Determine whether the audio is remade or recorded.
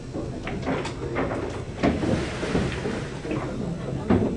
recorded